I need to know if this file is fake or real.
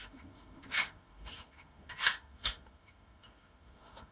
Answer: fake